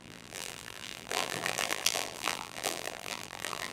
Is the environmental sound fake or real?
fake